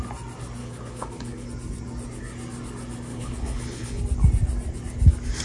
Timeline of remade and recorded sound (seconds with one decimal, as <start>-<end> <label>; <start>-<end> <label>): 0.0-0.6 recorded; 0.6-1.5 remade; 1.5-3.1 recorded; 3.1-4.0 remade; 4.0-5.4 recorded